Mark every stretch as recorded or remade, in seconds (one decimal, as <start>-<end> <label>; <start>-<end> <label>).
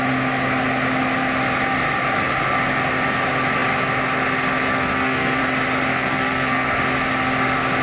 0.0-4.7 recorded; 4.7-5.4 remade; 5.4-5.9 recorded; 5.9-6.8 remade; 6.8-7.8 recorded